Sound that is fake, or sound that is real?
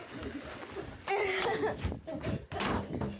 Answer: real